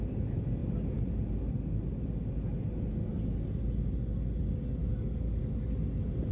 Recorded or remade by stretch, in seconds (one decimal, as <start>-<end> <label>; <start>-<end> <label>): 0.0-4.9 recorded; 4.9-5.4 remade; 5.4-6.3 recorded

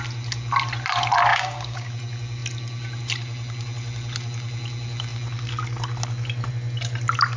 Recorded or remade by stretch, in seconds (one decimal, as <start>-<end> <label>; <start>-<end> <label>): 0.0-1.3 recorded; 1.3-1.9 remade; 1.9-7.4 recorded